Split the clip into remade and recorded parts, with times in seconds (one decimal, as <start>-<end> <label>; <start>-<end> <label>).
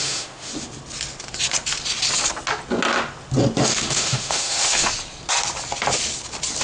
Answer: 0.0-0.5 remade; 0.5-3.6 recorded; 3.6-4.9 remade; 4.9-6.6 recorded